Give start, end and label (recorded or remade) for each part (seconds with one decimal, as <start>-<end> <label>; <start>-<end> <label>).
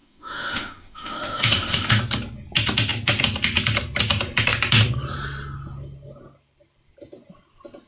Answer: 0.0-2.0 remade; 2.0-7.9 recorded